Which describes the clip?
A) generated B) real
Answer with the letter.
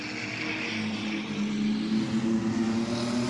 B